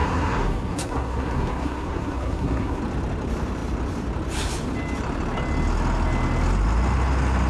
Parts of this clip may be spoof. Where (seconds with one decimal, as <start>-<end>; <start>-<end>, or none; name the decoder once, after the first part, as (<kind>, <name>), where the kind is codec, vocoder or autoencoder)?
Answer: 0.0-2.8 (codec, SNAC)